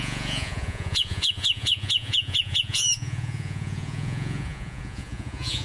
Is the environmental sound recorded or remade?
remade